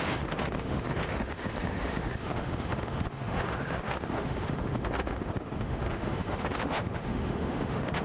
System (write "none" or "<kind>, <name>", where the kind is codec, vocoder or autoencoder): autoencoder, DAC-VAE